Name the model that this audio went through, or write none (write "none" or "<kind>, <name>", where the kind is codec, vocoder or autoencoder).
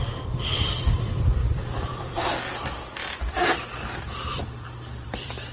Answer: vocoder, BigVGAN v2